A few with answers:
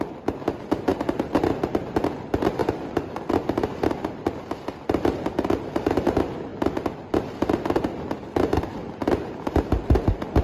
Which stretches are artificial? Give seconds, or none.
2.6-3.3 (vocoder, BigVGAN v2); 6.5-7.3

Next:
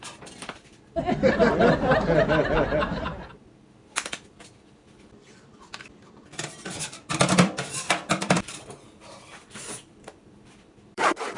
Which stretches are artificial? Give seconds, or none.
0.0-11.4 (vocoder, BigVGAN v2)

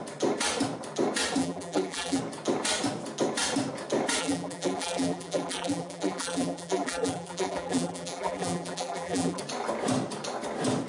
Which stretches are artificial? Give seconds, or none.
1.4-2.2 (vocoder, BigVGAN v2); 4.2-9.4

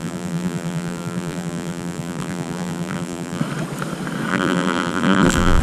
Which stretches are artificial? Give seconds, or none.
0.0-3.4 (vocoder, BigVGAN v2); 4.3-5.6

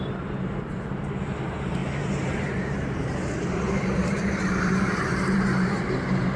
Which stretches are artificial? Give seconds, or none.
0.0-6.4 (vocoder, BigVGAN v2)

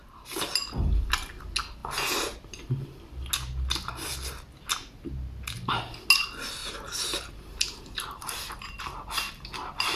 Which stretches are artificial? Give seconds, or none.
6.6-9.3 (vocoder, BigVGAN v2)

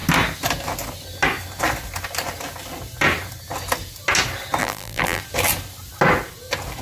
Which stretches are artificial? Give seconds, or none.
4.6-5.2 (vocoder, BigVGAN v2)

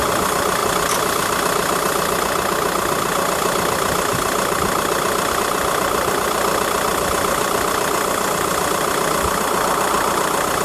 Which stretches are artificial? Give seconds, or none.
0.0-0.6 (vocoder, BigVGAN v2); 5.3-10.6